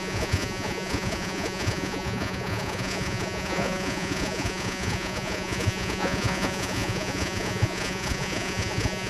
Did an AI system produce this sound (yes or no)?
yes